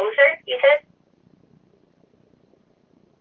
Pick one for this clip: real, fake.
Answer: fake